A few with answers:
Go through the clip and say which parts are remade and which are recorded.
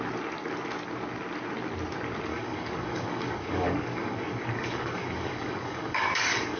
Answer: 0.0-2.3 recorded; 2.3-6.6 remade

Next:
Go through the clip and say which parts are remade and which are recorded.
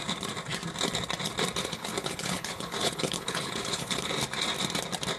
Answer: 0.0-1.6 recorded; 1.6-4.1 remade; 4.1-5.2 recorded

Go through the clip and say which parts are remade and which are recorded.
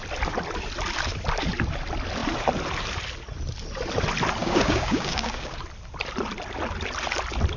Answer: 0.0-4.4 recorded; 4.4-5.6 remade; 5.6-7.6 recorded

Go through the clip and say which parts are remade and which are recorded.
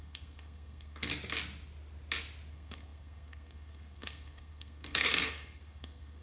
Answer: 0.0-1.1 remade; 1.1-2.5 recorded; 2.5-6.2 remade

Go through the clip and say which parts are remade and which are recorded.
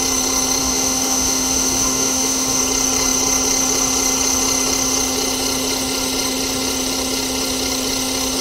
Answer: 0.0-0.6 recorded; 0.6-2.6 remade; 2.6-8.4 recorded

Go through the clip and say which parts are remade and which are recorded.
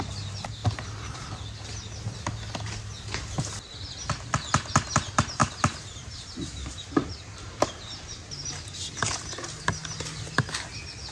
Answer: 0.0-5.4 recorded; 5.4-7.7 remade; 7.7-11.1 recorded